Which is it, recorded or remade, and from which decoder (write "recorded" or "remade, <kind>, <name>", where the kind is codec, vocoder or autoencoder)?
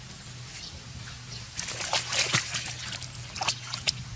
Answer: recorded